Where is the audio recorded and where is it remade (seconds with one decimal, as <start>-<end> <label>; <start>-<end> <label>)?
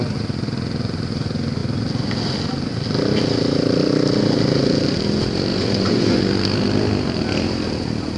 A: 0.0-5.5 recorded; 5.5-6.2 remade; 6.2-8.2 recorded